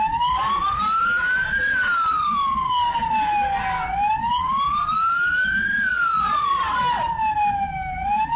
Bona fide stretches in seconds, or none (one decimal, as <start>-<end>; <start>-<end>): 0.0-5.9; 6.6-8.4